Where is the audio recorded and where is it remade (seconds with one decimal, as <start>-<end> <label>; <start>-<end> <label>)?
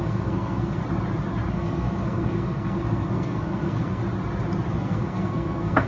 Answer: 0.0-0.8 remade; 0.8-1.5 recorded; 1.5-4.0 remade; 4.0-4.7 recorded; 4.7-5.9 remade